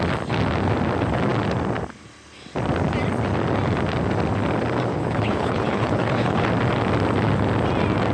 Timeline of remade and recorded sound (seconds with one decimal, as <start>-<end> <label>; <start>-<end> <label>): 0.0-4.9 recorded; 4.9-6.5 remade; 6.5-8.1 recorded